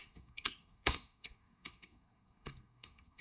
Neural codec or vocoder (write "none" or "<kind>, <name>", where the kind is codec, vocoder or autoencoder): codec, SNAC